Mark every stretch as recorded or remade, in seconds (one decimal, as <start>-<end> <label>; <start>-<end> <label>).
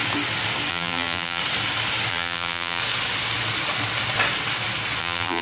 0.0-0.7 recorded; 0.7-1.4 remade; 1.4-2.1 recorded; 2.1-2.8 remade; 2.8-5.0 recorded; 5.0-5.4 remade